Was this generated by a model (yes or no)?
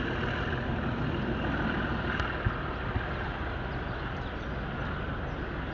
no